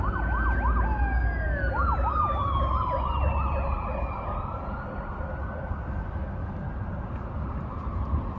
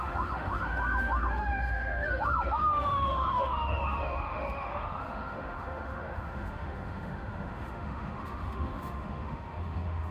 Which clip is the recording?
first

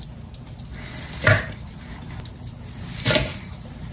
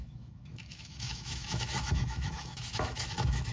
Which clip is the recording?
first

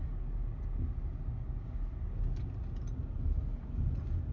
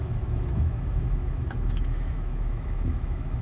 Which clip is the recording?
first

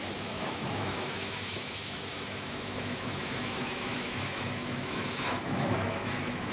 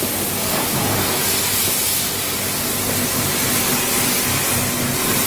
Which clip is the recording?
second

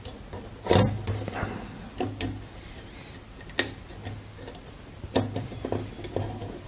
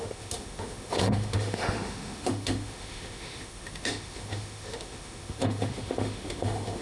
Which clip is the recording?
first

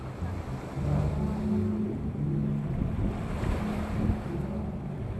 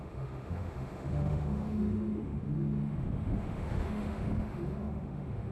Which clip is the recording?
first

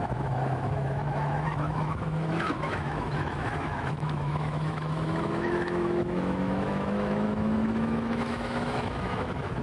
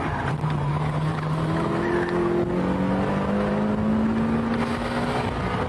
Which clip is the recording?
second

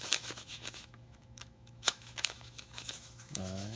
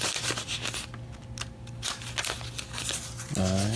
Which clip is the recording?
second